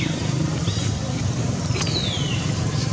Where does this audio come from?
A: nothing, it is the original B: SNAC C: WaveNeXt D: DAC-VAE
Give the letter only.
A